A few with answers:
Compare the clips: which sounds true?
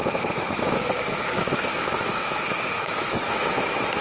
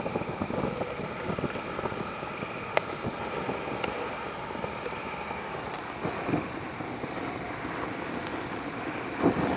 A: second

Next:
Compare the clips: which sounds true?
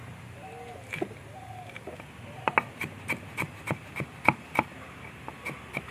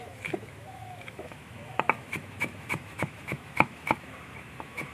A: first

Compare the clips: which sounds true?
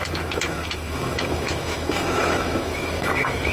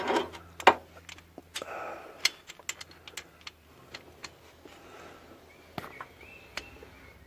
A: second